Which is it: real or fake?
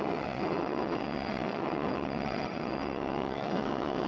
fake